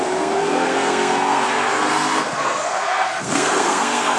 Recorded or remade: remade